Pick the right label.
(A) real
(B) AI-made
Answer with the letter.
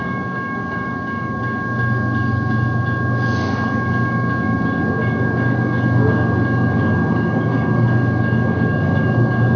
B